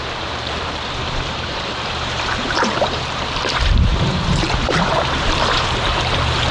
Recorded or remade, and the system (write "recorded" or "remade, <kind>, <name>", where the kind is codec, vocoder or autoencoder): remade, vocoder, BigVGAN v2